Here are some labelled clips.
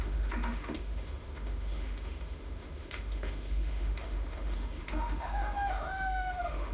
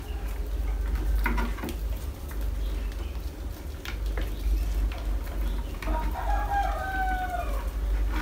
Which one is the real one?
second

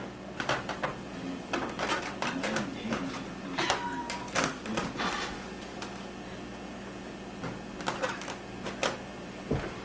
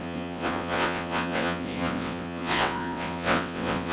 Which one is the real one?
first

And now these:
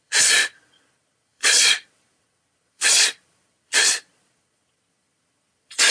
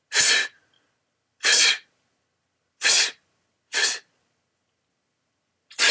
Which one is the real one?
second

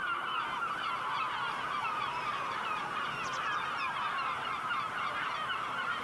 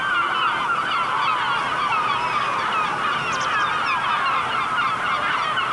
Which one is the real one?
second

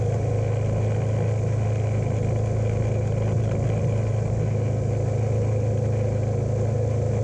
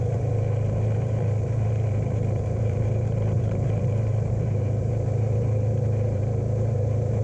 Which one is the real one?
first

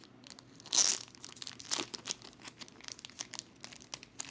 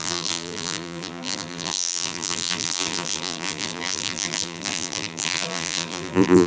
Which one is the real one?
first